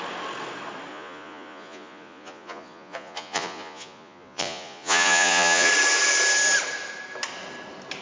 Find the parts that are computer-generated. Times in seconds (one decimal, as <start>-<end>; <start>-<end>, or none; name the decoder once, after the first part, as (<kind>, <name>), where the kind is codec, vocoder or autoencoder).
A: 0.9-5.7 (vocoder, Vocos)